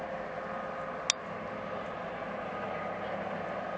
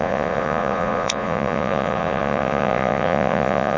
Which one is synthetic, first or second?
second